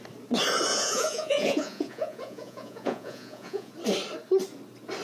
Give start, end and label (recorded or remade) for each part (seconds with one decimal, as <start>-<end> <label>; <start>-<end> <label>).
0.0-0.7 recorded; 0.7-3.7 remade; 3.7-5.0 recorded